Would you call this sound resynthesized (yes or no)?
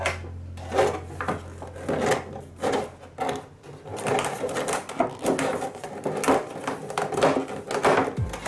no